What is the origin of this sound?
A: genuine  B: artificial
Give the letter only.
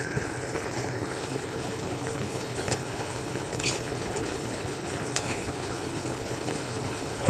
B